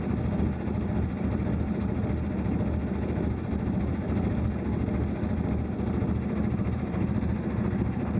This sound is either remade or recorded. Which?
recorded